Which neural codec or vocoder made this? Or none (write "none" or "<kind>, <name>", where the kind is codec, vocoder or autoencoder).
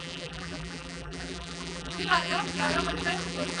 vocoder, BigVGAN v2